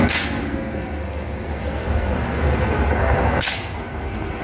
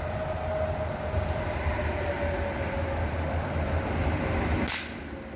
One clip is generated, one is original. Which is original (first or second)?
second